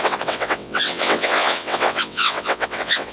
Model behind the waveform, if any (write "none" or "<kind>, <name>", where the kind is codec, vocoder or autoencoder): vocoder, WaveNeXt